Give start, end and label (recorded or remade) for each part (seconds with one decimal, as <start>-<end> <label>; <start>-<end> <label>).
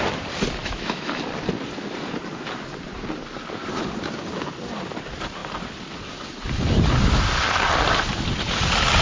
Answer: 0.0-0.6 recorded; 0.6-1.1 remade; 1.1-9.0 recorded